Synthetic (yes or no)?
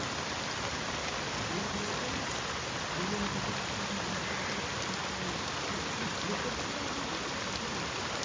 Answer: no